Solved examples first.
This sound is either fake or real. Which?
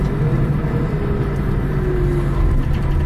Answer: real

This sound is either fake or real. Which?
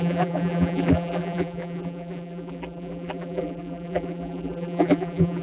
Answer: fake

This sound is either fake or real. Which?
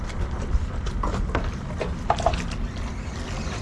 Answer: real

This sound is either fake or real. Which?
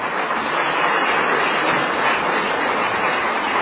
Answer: real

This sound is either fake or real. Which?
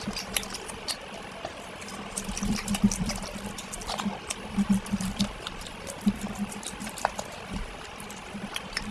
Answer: fake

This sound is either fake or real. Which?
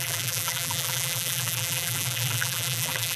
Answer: fake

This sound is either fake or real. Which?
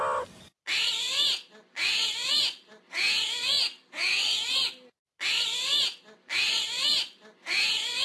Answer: real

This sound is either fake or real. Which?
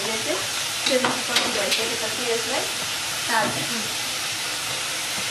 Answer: fake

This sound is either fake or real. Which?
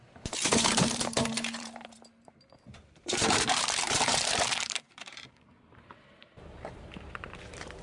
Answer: fake